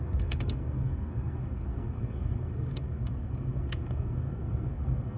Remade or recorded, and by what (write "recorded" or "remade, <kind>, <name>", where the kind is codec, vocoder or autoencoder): remade, codec, SNAC